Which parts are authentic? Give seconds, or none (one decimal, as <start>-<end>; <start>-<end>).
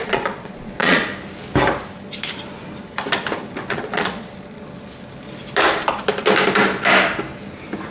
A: 1.1-3.7; 4.3-7.9